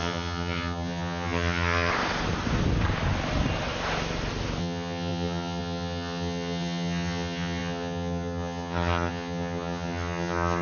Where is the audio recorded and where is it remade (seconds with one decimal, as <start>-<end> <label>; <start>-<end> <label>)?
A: 0.0-1.9 remade; 1.9-4.6 recorded; 4.6-10.6 remade

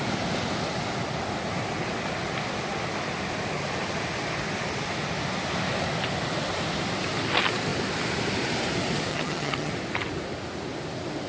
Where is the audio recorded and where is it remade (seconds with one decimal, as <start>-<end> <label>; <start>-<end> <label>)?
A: 0.0-9.1 recorded; 9.1-9.7 remade; 9.7-11.3 recorded

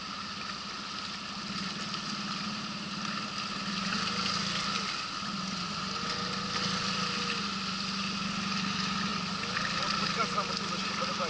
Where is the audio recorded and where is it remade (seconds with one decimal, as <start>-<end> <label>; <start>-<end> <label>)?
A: 0.0-11.3 recorded

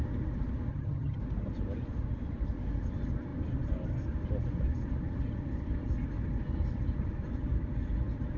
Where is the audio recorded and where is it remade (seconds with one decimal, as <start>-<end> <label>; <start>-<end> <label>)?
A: 0.0-0.7 recorded; 0.7-1.2 remade; 1.2-8.4 recorded

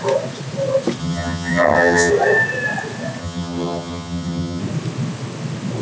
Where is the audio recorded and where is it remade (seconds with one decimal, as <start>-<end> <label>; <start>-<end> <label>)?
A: 0.0-1.0 recorded; 1.0-2.1 remade; 2.1-3.2 recorded; 3.2-4.6 remade; 4.6-5.8 recorded

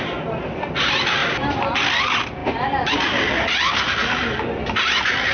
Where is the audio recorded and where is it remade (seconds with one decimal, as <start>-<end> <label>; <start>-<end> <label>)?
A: 0.0-5.3 recorded